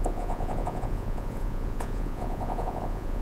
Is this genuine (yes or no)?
no